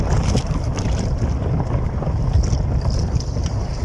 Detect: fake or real real